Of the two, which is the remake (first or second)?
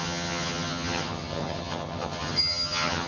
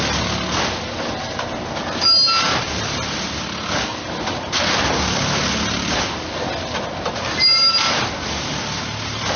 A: first